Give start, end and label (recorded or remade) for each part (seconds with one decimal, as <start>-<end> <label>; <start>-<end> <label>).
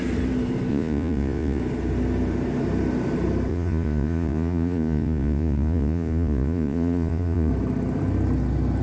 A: 0.0-0.7 recorded; 0.7-1.6 remade; 1.6-3.5 recorded; 3.5-7.5 remade; 7.5-8.8 recorded